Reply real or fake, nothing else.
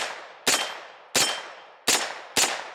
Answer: real